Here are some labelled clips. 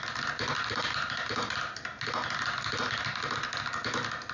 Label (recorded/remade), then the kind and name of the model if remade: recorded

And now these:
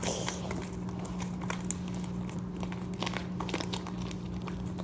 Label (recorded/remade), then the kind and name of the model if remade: recorded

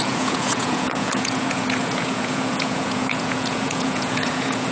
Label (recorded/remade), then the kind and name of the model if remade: remade, vocoder, Vocos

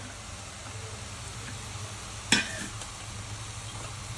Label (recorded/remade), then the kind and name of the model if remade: recorded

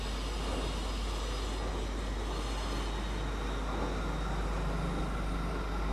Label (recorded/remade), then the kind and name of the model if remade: recorded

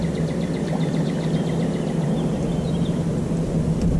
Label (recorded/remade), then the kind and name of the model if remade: recorded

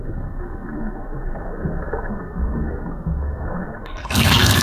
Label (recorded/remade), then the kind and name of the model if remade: remade, codec, SNAC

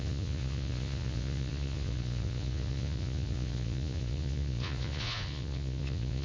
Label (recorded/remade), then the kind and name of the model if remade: remade, vocoder, Vocos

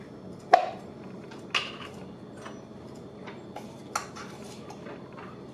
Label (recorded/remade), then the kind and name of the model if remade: recorded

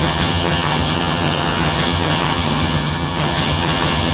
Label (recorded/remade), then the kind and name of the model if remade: remade, vocoder, HiFi-GAN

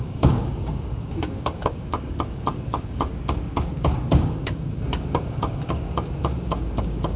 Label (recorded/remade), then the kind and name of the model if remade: remade, codec, DAC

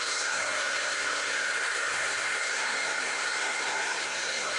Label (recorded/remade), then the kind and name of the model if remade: remade, codec, SNAC